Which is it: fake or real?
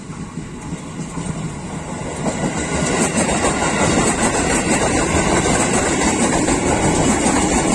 real